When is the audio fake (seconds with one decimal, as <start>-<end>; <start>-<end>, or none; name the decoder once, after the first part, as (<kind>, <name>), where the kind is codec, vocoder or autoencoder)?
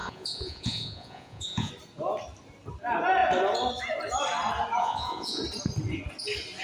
0.0-1.7 (vocoder, Vocos); 4.8-5.4